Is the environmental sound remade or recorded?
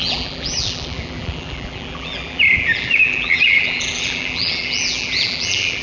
remade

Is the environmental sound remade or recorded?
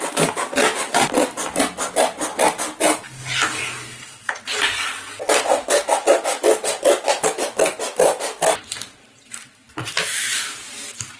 recorded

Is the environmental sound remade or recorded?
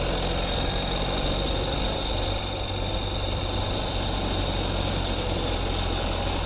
recorded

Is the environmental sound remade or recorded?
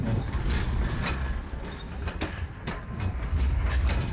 remade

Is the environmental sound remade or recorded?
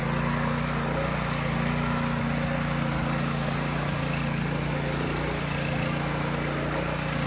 recorded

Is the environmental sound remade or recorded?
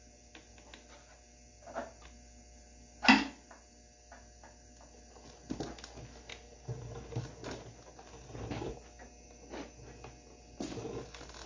recorded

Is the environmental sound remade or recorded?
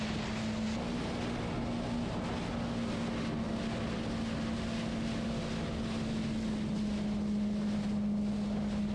recorded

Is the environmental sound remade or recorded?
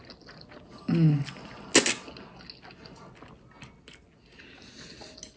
recorded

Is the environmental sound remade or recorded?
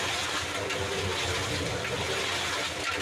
recorded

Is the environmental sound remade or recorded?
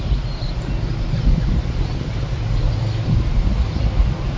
recorded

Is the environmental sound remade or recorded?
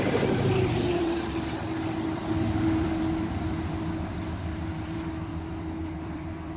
remade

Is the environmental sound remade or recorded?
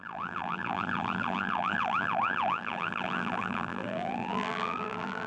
remade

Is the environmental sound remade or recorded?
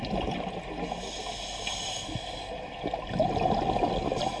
recorded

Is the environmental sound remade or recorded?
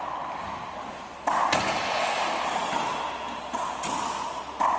recorded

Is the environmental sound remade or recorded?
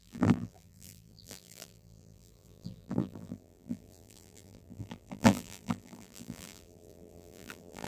remade